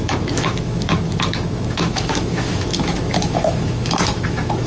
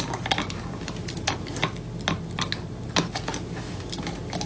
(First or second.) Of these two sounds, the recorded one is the second